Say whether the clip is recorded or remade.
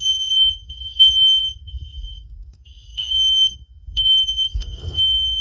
remade